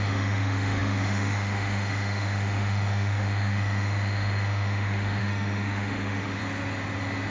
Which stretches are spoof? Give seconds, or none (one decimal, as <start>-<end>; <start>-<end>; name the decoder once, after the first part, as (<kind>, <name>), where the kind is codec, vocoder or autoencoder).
0.0-6.4 (autoencoder, DAC-VAE)